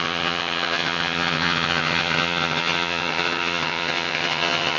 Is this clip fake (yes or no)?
yes